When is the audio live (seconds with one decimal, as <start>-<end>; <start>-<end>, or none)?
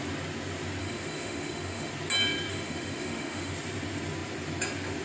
0.0-0.8; 1.9-2.5; 3.5-5.0